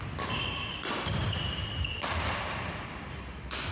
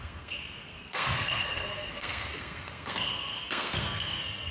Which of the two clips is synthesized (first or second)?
second